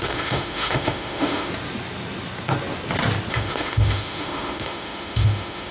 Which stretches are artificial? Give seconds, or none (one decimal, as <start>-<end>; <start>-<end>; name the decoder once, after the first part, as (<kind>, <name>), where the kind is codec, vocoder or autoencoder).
0.0-1.5 (autoencoder, DAC-VAE); 3.3-5.7